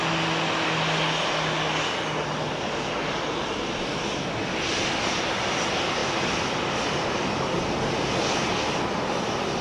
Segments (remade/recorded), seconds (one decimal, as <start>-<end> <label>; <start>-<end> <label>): 0.0-6.0 recorded; 6.0-8.1 remade; 8.1-9.6 recorded